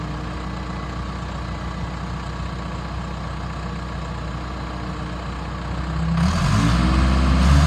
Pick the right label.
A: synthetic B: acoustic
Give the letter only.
B